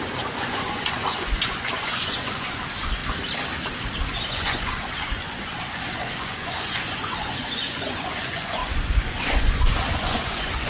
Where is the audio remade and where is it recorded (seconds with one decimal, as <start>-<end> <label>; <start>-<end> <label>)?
0.0-3.0 remade; 3.0-4.3 recorded; 4.3-10.7 remade